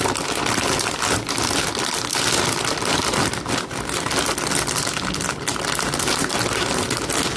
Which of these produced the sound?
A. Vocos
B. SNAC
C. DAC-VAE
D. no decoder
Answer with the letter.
D